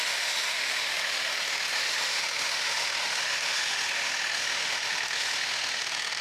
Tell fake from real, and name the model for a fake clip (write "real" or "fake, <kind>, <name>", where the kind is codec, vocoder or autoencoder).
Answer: fake, autoencoder, DAC-VAE